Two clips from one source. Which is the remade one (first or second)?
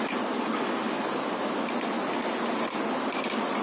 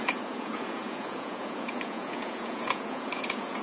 second